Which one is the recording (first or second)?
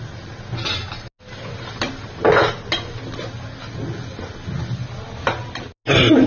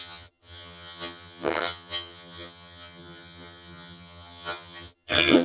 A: first